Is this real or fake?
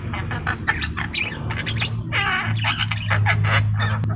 real